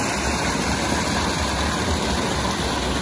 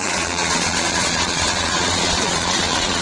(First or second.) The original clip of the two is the first